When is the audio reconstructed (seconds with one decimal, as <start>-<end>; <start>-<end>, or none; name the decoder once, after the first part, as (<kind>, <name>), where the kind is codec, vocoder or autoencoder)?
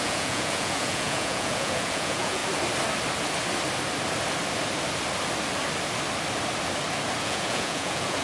0.0-2.4 (vocoder, Vocos); 7.2-8.2